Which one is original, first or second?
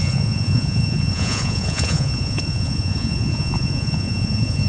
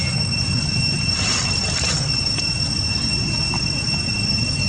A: second